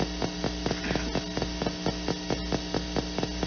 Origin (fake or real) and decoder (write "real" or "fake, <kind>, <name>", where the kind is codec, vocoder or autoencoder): real